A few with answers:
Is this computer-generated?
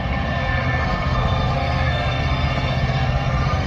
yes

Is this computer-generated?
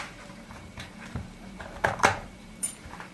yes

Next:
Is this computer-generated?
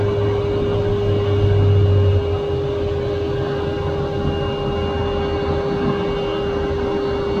no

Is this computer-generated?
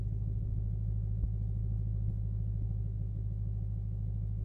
no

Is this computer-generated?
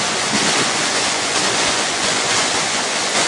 yes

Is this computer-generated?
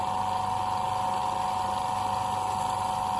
no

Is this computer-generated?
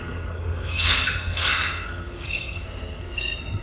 yes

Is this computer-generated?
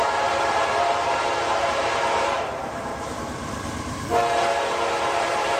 yes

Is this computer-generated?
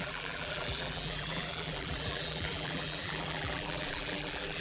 yes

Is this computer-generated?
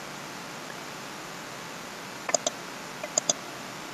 no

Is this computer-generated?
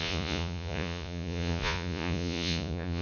yes